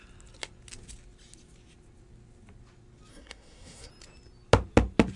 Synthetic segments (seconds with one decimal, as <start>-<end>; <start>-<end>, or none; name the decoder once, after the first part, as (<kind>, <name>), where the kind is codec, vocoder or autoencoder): 3.1-3.9 (codec, SNAC)